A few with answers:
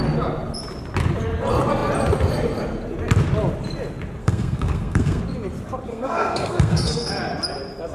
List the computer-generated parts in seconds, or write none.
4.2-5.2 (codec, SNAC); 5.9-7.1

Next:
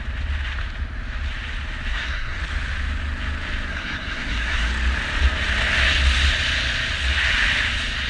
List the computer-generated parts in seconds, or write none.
1.9-2.4 (codec, SNAC); 3.7-4.7

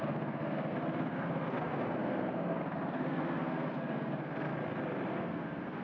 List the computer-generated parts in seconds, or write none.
0.0-4.5 (codec, SNAC); 5.1-5.8

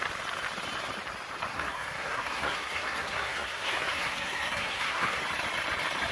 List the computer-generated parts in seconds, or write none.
1.5-5.2 (codec, SNAC)

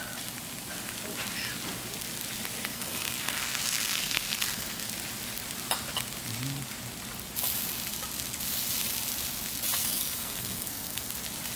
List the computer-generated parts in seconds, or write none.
2.7-4.9 (codec, SNAC); 9.8-11.1

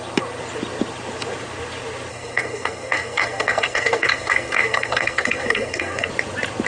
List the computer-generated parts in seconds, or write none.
2.1-6.1 (codec, SNAC)

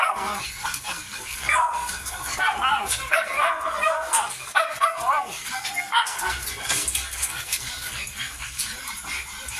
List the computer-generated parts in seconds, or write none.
0.0-8.7 (codec, SNAC)